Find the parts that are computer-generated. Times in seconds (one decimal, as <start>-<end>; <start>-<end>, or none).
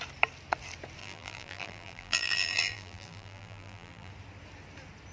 1.0-4.1